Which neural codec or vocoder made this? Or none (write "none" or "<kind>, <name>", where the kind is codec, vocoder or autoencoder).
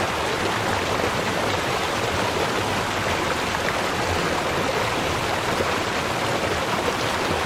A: none